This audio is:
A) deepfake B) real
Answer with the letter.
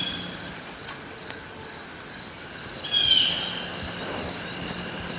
B